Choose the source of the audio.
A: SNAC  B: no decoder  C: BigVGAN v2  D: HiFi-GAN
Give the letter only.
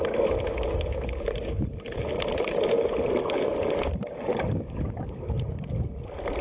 B